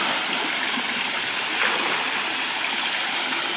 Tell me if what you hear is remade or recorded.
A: recorded